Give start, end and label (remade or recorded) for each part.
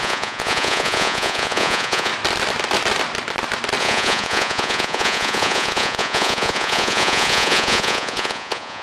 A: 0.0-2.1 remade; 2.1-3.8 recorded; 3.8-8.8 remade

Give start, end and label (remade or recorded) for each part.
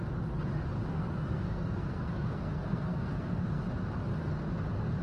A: 0.0-0.9 recorded; 0.9-3.6 remade; 3.6-5.0 recorded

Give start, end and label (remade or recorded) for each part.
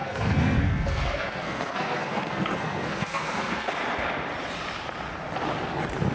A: 0.0-3.7 remade; 3.7-6.1 recorded